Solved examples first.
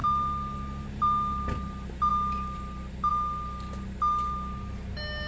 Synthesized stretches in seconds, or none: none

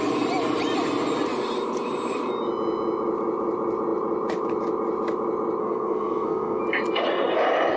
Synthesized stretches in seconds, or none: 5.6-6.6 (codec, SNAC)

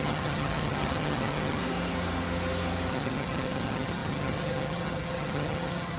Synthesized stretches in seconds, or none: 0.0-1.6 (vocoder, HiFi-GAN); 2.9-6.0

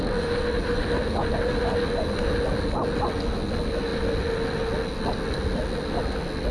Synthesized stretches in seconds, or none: none

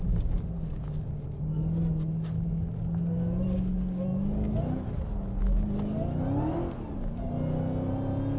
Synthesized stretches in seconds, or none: none

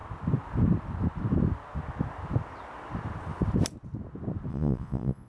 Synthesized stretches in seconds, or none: 4.5-5.3 (vocoder, Vocos)